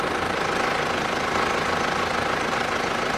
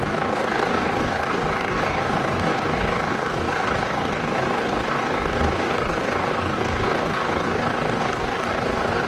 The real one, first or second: first